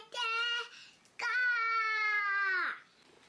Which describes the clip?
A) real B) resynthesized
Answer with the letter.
A